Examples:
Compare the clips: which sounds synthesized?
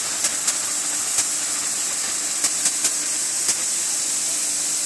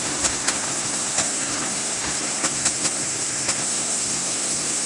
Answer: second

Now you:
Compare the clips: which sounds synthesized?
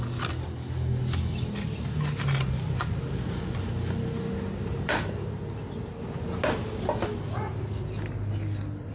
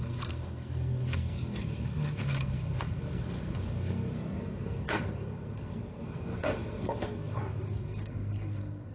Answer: second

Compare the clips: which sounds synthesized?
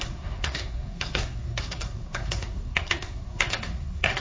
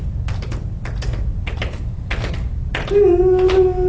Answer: first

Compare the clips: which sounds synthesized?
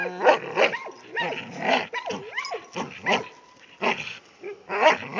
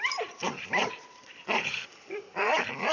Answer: second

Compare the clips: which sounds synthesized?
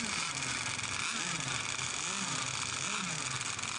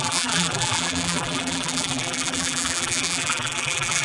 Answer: second